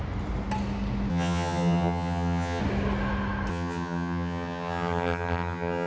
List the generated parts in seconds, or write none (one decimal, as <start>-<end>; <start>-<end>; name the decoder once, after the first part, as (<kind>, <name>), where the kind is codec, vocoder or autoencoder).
1.1-2.6 (vocoder, HiFi-GAN); 3.5-5.9